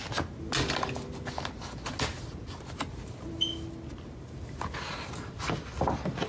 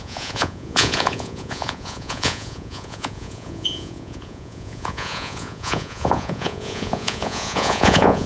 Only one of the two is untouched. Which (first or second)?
first